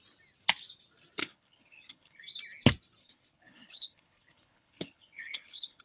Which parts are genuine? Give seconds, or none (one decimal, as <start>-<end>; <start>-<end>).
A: 0.0-1.2; 2.2-3.0